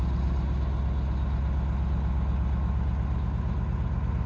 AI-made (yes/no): no